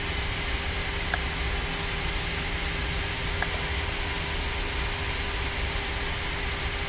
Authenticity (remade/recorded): recorded